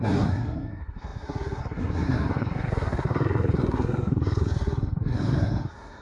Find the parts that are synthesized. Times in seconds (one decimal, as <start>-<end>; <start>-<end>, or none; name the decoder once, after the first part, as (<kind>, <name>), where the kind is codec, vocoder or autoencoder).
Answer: 0.0-6.0 (codec, SNAC)